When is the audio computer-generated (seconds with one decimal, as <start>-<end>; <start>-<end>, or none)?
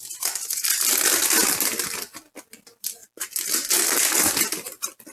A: none